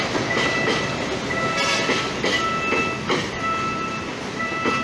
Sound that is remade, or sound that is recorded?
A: recorded